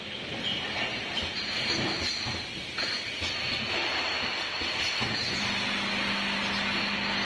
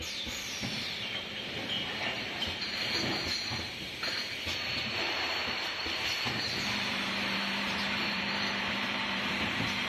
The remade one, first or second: second